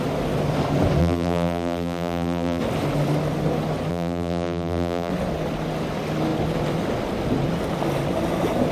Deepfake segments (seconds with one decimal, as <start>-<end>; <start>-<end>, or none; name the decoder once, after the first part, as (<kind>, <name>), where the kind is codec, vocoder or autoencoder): 1.0-2.6 (vocoder, BigVGAN v2); 3.9-5.1

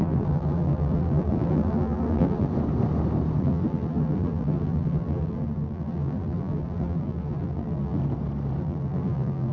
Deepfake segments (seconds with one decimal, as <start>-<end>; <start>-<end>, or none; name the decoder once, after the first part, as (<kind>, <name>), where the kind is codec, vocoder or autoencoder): 0.0-2.5 (vocoder, BigVGAN v2); 3.4-8.0; 8.6-9.5

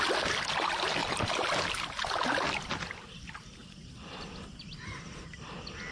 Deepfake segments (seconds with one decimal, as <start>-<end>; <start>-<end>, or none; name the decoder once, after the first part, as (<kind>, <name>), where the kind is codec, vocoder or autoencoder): 0.0-1.0 (vocoder, BigVGAN v2); 2.4-3.6

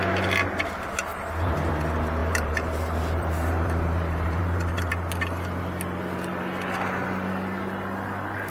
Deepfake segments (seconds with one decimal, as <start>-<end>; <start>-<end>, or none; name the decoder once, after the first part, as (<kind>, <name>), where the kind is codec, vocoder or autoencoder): 1.1-1.7 (vocoder, BigVGAN v2); 2.2-4.9

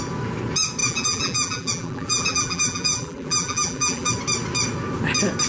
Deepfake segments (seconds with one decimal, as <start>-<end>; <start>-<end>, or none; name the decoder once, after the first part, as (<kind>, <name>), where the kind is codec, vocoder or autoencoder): 0.8-4.1 (vocoder, BigVGAN v2)

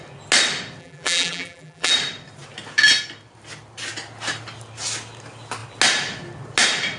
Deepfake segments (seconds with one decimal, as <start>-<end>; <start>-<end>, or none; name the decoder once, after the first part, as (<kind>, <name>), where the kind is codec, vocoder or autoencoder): 0.8-1.9 (vocoder, BigVGAN v2)

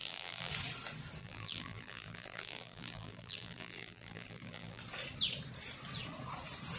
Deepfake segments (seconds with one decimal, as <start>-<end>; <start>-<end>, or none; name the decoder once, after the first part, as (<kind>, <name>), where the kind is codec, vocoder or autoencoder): 0.0-0.5 (vocoder, BigVGAN v2); 1.2-4.8